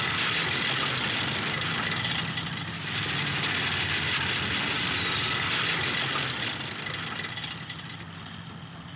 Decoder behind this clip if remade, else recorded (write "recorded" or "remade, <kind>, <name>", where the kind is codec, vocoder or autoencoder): recorded